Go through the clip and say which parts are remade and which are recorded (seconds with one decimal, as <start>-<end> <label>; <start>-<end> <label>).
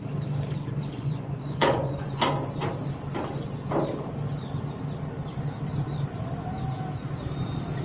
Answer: 0.0-0.9 recorded; 0.9-2.2 remade; 2.2-7.8 recorded